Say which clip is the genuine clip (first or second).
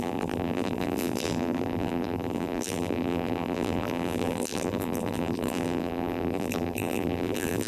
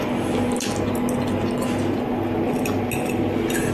second